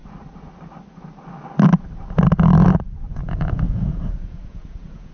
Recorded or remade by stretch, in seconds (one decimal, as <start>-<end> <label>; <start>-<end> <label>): 0.0-3.1 recorded; 3.1-5.1 remade